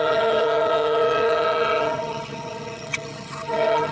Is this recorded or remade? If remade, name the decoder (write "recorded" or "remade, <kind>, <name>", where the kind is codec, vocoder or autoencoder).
remade, vocoder, HiFi-GAN